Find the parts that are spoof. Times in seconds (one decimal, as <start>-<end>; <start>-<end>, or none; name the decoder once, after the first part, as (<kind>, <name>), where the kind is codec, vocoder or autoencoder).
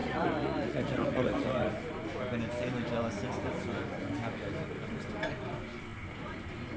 0.0-1.7 (vocoder, Vocos)